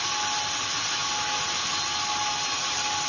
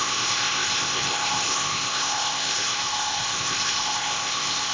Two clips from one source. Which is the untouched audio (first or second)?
first